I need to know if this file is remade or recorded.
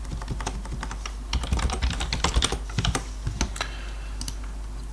recorded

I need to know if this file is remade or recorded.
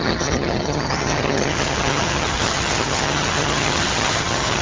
remade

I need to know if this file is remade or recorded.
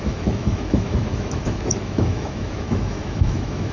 remade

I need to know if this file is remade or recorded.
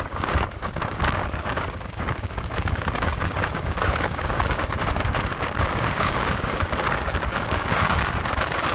remade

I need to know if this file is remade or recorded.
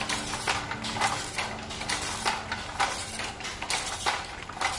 recorded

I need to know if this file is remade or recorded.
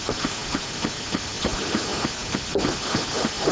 recorded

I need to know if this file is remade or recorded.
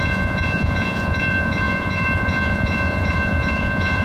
remade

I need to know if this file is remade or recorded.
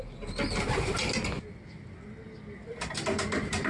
recorded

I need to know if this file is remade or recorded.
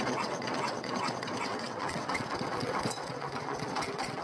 remade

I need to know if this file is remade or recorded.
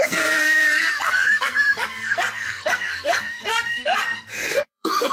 remade